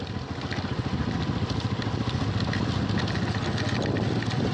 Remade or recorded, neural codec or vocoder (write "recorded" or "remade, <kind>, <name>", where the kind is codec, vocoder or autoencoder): recorded